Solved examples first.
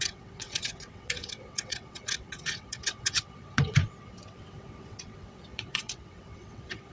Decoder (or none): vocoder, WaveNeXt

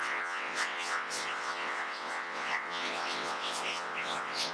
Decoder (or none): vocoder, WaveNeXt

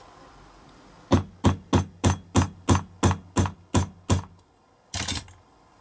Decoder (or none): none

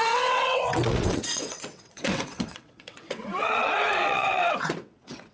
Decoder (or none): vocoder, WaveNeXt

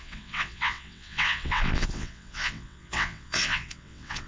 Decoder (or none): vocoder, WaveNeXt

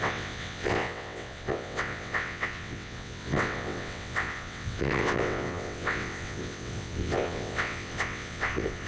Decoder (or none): vocoder, WaveNeXt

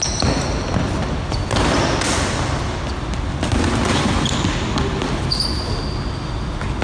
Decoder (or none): none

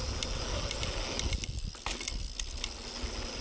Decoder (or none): none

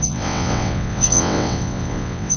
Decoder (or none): vocoder, WaveNeXt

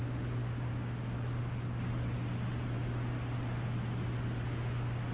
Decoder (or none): none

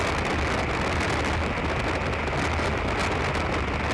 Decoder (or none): none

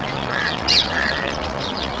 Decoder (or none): vocoder, WaveNeXt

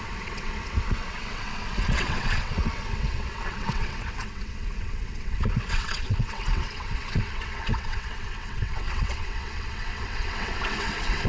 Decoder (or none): vocoder, WaveNeXt